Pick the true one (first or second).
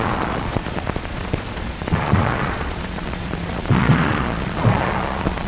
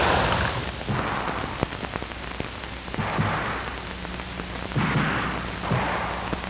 second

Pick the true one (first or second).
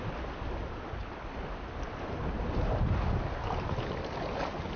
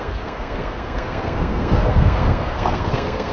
first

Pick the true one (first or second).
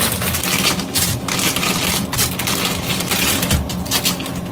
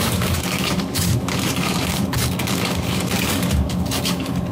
first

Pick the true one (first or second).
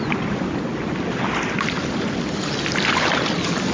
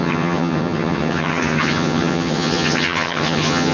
first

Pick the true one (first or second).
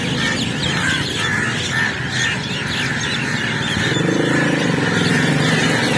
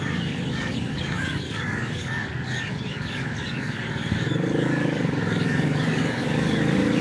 first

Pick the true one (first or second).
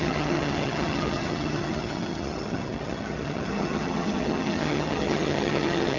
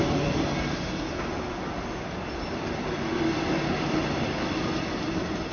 second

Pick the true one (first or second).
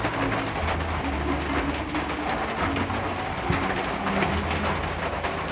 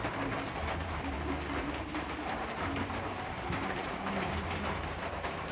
first